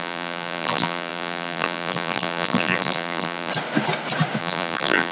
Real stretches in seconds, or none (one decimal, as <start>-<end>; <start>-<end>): 3.5-4.4